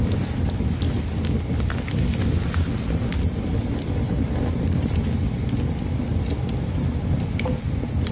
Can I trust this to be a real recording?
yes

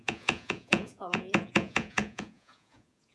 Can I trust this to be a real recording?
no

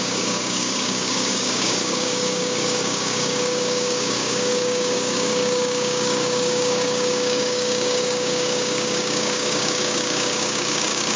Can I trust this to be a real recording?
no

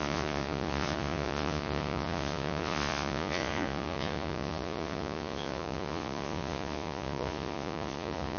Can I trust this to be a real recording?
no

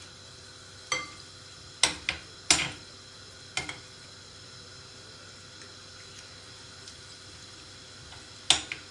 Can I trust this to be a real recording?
yes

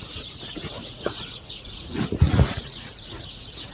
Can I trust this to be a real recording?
no